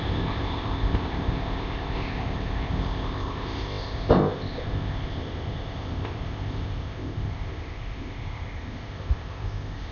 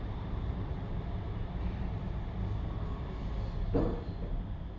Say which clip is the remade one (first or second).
first